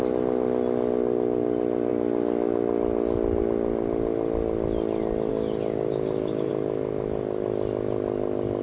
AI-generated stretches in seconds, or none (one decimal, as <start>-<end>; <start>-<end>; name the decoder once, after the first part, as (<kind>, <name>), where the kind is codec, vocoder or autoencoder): 5.3-6.5 (codec, DAC)